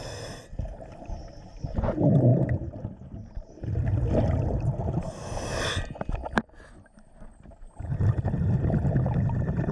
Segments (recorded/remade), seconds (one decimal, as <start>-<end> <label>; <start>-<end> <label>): 0.0-9.7 recorded